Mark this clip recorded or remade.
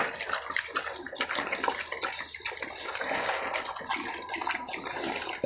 recorded